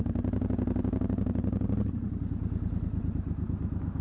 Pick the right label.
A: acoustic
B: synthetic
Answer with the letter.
A